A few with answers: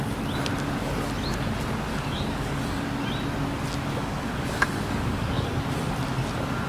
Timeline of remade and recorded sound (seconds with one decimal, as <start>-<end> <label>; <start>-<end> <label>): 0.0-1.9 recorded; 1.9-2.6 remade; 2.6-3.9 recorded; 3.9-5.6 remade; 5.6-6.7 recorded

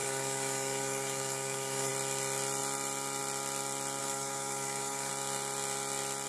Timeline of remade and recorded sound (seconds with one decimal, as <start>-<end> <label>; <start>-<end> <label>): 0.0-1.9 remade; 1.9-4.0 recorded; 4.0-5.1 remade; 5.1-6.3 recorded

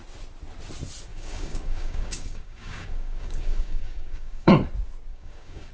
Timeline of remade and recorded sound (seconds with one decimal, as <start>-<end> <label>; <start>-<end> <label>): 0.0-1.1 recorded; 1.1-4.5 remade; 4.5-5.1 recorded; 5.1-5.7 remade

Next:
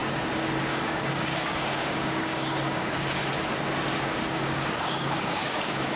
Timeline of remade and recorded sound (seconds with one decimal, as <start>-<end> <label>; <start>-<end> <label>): 0.0-0.6 recorded; 0.6-3.2 remade; 3.2-4.0 recorded; 4.0-6.0 remade